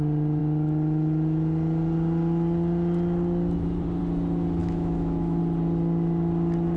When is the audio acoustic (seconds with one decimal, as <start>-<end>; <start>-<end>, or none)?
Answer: 0.0-4.6; 5.4-6.8